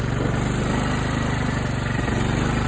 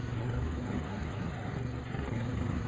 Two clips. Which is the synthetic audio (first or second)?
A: second